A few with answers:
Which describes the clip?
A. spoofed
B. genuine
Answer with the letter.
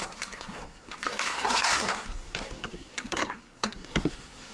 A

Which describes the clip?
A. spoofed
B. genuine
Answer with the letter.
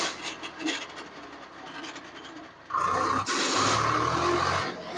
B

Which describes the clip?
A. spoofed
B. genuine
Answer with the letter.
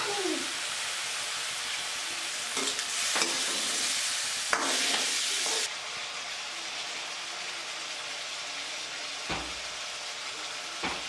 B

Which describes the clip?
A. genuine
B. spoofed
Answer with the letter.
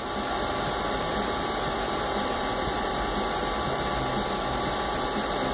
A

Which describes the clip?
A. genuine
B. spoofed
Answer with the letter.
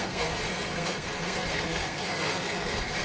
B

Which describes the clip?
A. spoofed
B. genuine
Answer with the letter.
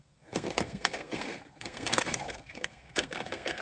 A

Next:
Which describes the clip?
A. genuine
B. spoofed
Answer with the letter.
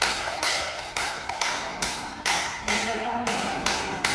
B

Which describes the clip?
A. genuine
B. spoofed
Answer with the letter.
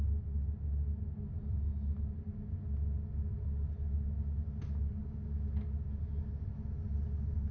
A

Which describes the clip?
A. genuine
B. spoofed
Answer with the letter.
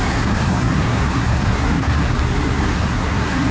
B